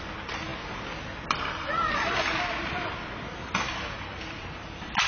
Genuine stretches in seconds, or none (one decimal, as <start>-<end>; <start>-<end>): none